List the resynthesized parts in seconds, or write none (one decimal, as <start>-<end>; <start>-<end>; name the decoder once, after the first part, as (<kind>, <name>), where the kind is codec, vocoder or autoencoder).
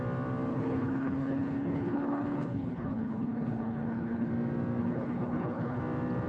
0.5-4.3 (codec, HILCodec); 4.8-5.8